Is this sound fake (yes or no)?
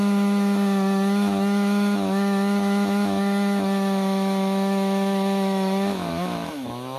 yes